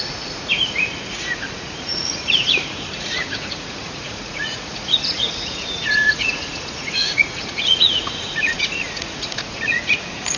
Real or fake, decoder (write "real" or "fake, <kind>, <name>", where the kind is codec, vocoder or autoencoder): fake, vocoder, Vocos